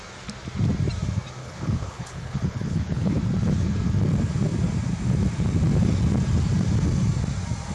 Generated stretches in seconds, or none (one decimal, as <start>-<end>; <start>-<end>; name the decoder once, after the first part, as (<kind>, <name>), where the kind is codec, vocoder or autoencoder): 1.4-3.2 (codec, HILCodec)